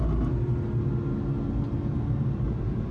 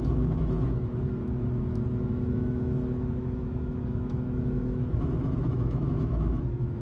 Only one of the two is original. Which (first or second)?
first